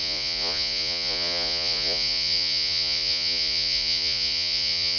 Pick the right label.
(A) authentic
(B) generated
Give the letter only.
B